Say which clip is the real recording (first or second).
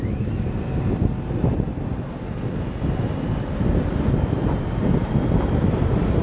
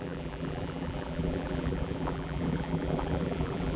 first